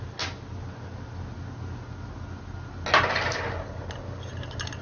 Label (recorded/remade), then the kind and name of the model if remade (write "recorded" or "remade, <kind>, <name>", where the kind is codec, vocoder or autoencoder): recorded